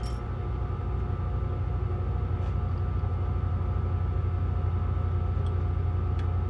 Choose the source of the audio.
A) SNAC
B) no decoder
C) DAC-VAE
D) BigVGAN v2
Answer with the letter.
B